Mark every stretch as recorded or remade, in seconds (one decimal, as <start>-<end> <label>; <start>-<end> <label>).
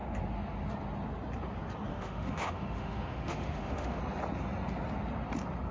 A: 0.0-1.9 recorded; 1.9-4.0 remade; 4.0-5.7 recorded